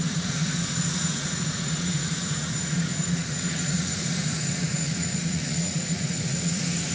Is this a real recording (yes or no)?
no